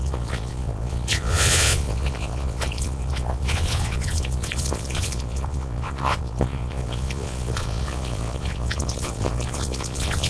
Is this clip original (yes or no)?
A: no